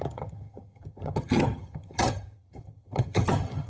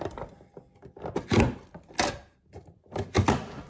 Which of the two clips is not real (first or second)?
first